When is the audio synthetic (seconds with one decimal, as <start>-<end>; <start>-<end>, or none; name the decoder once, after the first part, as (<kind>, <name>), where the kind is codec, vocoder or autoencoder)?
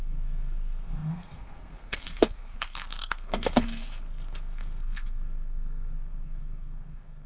0.0-7.3 (codec, SNAC)